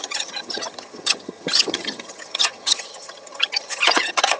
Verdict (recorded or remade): remade